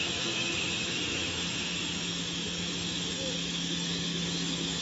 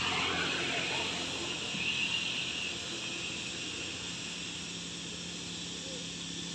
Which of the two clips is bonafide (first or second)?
second